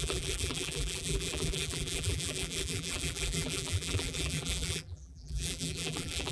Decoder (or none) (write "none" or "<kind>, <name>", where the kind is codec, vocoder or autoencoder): vocoder, BigVGAN v2